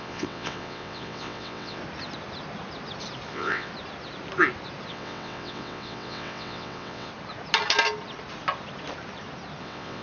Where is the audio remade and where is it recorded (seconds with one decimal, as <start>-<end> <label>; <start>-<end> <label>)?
0.0-1.8 remade; 1.8-3.3 recorded; 3.3-3.7 remade; 3.7-4.9 recorded; 4.9-7.1 remade; 7.1-9.6 recorded; 9.6-10.0 remade